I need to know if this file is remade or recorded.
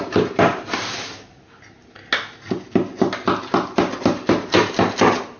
recorded